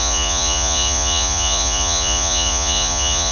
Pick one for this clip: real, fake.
fake